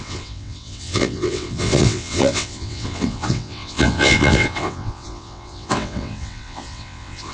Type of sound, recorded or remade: remade